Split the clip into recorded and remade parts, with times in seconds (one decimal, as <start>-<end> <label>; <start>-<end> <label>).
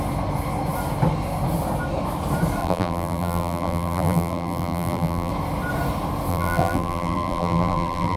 0.0-2.6 recorded; 2.6-5.3 remade; 5.3-6.3 recorded; 6.3-8.2 remade